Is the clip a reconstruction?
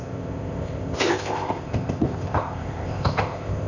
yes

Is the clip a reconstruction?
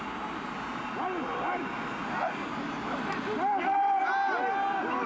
no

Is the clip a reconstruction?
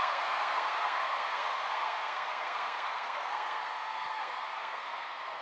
yes